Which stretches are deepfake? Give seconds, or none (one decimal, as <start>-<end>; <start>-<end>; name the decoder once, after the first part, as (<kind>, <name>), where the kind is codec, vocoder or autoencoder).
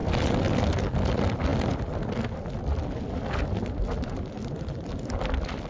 none